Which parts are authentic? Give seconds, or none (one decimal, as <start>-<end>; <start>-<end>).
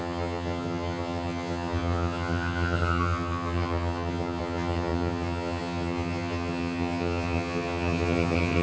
none